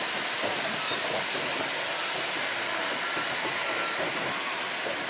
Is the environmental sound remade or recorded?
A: recorded